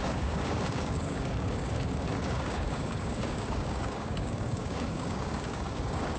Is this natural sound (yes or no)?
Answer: no